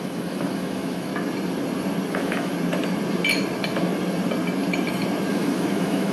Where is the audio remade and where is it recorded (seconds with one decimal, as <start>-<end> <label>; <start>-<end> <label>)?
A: 0.0-1.1 remade; 1.1-2.1 recorded; 2.1-2.5 remade; 2.5-5.3 recorded; 5.3-6.1 remade